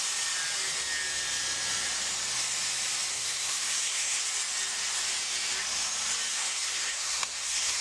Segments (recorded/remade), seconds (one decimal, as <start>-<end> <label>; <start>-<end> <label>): 0.0-3.1 recorded; 3.1-4.2 remade; 4.2-6.3 recorded; 6.3-7.8 remade

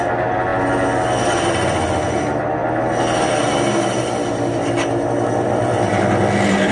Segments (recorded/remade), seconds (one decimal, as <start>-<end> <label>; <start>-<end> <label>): 0.0-6.7 recorded

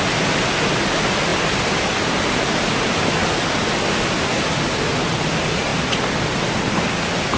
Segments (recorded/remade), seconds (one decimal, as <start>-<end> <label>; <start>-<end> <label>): 0.0-7.4 recorded

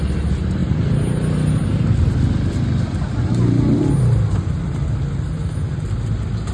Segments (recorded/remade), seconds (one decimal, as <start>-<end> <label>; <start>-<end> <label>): 0.0-6.5 recorded

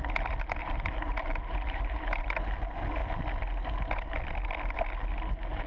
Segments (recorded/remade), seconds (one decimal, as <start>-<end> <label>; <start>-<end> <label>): 0.0-0.6 recorded; 0.6-2.2 remade; 2.2-5.1 recorded; 5.1-5.7 remade

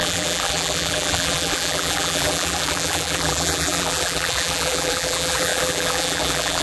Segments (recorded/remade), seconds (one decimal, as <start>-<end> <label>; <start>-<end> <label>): 0.0-6.6 remade